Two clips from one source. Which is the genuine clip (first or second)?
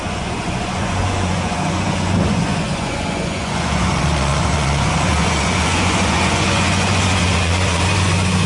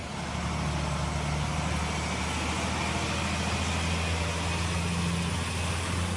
second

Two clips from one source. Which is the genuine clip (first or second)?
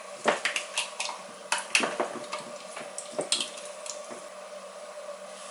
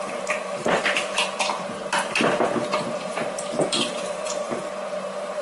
first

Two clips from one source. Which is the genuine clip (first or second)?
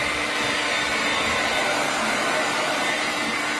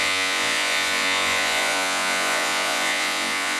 first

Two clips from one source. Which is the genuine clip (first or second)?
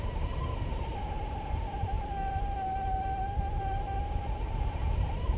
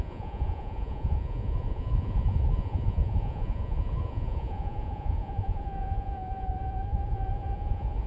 first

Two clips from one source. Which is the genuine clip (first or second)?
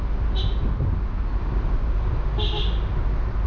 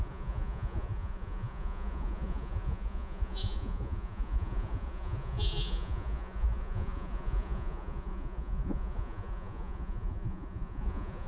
first